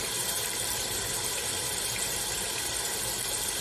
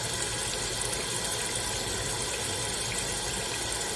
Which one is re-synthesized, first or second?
first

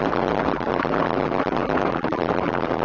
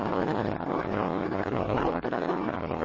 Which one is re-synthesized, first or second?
second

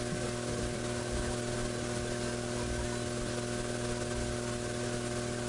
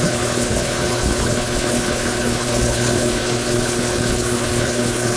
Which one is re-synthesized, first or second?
second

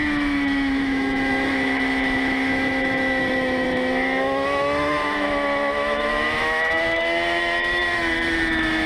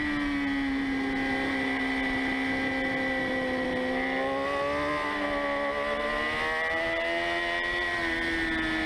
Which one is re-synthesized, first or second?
first